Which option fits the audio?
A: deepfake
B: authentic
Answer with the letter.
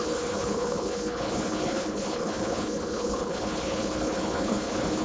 A